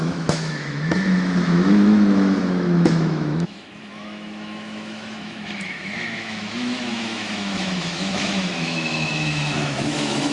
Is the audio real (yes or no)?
no